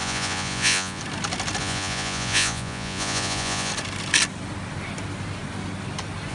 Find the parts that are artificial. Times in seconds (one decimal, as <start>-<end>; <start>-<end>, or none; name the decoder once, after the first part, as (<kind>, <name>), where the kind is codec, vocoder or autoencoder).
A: 0.0-1.0 (vocoder, Vocos); 1.6-3.7